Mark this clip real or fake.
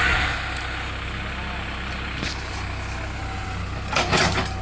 real